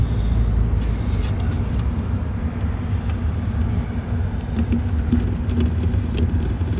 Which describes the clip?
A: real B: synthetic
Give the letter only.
A